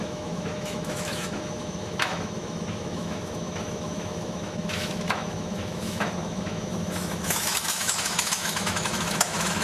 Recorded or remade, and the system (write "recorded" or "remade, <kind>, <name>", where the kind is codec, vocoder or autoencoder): remade, autoencoder, DAC-VAE